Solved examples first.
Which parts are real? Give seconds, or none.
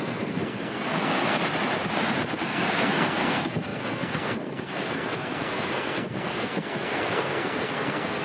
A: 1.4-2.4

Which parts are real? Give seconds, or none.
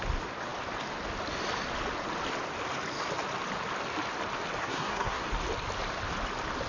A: 0.0-4.6; 5.2-6.7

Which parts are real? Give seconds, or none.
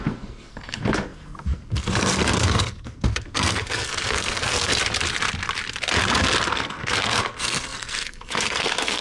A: 4.7-6.5